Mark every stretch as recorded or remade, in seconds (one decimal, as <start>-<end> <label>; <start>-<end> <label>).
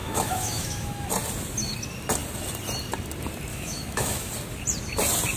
0.0-1.1 remade; 1.1-3.5 recorded; 3.5-4.3 remade; 4.3-5.4 recorded